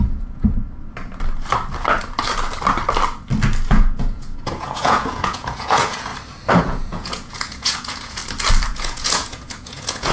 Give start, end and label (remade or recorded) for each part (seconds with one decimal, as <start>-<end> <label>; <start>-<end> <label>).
0.0-0.6 remade; 0.6-3.7 recorded; 3.7-6.1 remade; 6.1-6.6 recorded; 6.6-8.2 remade; 8.2-8.7 recorded; 8.7-10.1 remade